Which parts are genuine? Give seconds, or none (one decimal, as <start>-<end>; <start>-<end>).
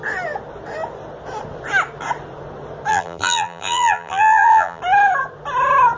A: 0.0-2.9; 4.8-6.0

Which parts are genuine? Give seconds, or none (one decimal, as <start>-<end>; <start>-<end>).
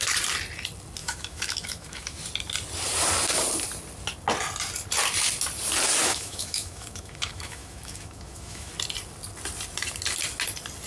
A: 0.0-1.0; 2.2-6.0; 8.7-10.9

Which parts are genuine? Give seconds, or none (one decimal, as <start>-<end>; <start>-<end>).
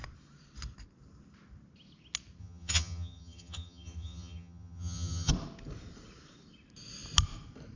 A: 0.0-2.4; 5.3-7.8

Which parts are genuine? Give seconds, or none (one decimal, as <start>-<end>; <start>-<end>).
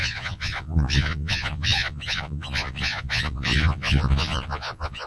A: none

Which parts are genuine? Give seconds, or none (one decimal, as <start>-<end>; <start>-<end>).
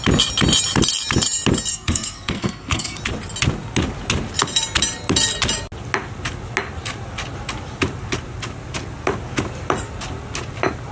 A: 0.0-1.7; 3.0-10.9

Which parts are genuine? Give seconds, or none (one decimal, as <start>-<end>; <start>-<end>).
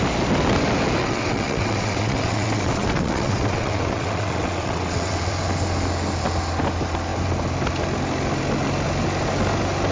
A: 0.0-1.0; 5.3-9.9